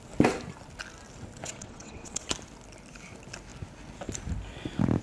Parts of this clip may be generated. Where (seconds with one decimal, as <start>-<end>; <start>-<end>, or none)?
1.4-2.3